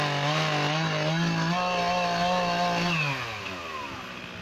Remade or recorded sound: recorded